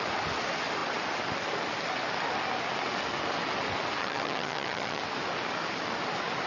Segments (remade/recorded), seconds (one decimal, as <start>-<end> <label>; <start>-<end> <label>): 0.0-4.0 recorded; 4.0-5.0 remade; 5.0-6.5 recorded

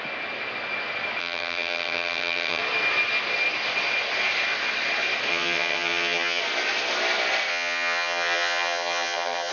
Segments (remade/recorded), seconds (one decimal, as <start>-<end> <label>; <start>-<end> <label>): 0.0-1.2 recorded; 1.2-2.6 remade; 2.6-5.3 recorded; 5.3-6.4 remade; 6.4-7.5 recorded; 7.5-9.5 remade

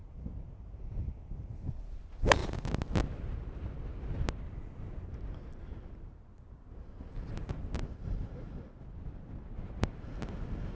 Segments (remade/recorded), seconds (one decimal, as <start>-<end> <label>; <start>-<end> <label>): 0.0-10.7 recorded